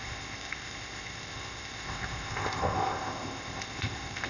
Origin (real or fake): fake